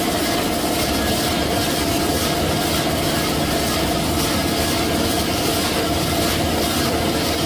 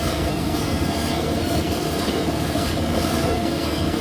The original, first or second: first